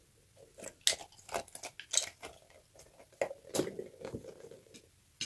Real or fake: real